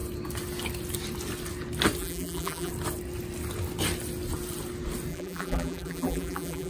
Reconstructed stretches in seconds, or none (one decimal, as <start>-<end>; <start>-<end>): 2.0-2.7; 5.1-6.7